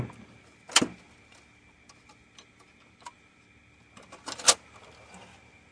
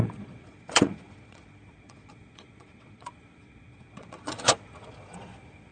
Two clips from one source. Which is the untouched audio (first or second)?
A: first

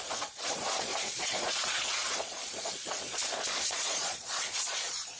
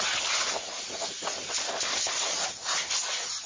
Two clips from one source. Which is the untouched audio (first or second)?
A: second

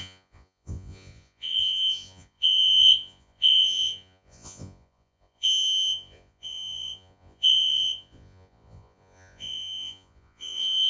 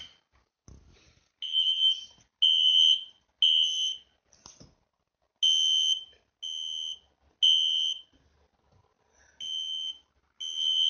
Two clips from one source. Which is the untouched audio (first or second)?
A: second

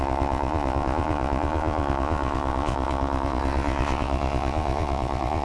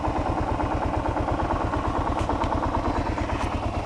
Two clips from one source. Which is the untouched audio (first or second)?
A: second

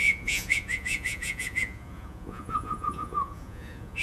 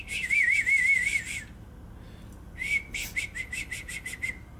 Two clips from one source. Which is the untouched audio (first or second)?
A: second